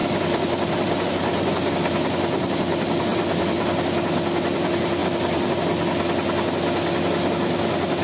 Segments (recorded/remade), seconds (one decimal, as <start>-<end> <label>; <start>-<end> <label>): 0.0-1.1 remade; 1.1-3.1 recorded; 3.1-3.7 remade; 3.7-5.0 recorded; 5.0-5.5 remade; 5.5-8.0 recorded